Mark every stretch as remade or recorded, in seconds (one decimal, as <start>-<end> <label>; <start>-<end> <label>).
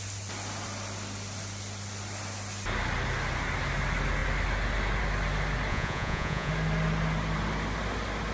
0.0-5.7 recorded; 5.7-6.5 remade; 6.5-8.3 recorded